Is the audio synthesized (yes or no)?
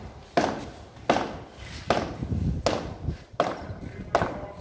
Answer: no